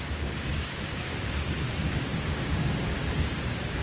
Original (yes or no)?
no